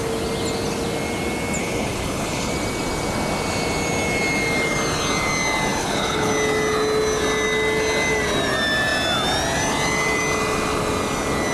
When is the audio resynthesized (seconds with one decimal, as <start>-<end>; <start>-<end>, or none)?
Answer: 1.6-2.5; 5.8-6.3